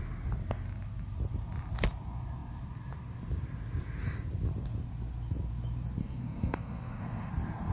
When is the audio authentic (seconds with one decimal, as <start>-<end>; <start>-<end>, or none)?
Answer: 0.0-6.0; 7.3-7.7